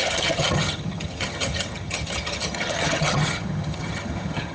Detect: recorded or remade remade